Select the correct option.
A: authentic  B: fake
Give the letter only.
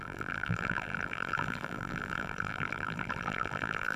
B